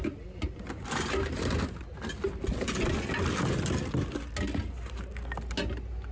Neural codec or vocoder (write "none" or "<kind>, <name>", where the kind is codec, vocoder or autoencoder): none